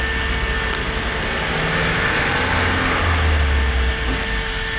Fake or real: real